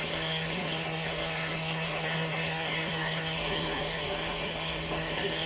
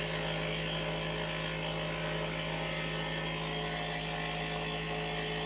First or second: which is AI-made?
first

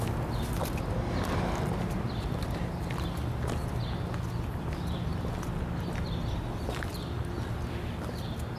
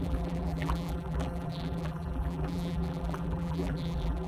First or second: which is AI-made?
second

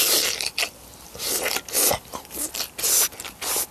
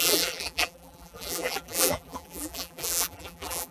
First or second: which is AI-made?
second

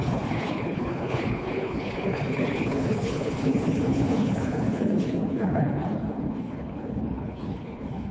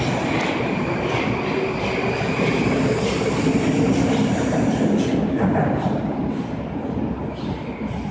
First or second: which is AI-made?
first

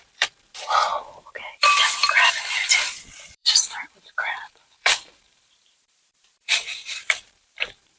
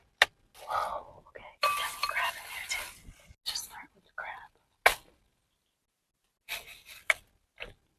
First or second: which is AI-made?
first